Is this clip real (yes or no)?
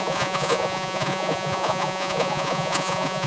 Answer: no